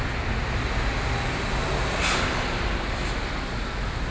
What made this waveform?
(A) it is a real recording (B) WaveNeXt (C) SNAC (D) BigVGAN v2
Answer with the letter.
A